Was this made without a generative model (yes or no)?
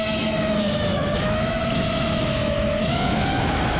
no